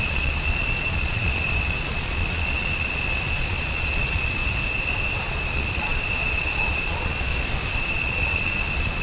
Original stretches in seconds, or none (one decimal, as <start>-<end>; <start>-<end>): 4.4-5.2; 7.3-7.8